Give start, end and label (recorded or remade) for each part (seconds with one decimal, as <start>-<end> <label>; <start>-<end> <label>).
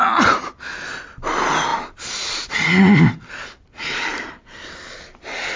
0.0-5.6 recorded